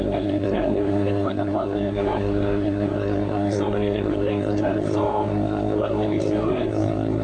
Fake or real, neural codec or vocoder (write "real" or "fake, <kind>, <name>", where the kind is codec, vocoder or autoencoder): fake, codec, SNAC